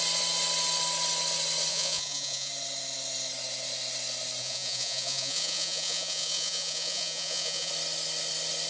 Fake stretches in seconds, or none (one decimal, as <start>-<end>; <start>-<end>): 1.7-2.5; 4.4-7.7